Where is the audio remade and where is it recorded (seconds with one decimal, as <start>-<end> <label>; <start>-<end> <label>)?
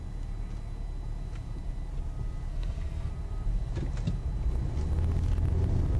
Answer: 0.0-2.5 recorded; 2.5-3.1 remade; 3.1-6.0 recorded